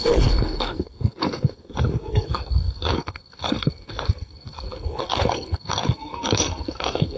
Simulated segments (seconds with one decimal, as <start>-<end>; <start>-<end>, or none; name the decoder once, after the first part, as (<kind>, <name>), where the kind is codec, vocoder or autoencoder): 0.0-7.2 (codec, SNAC)